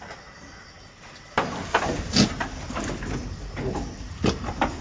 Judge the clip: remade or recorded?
recorded